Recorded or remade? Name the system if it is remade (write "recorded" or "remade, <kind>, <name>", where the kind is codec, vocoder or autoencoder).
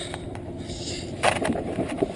recorded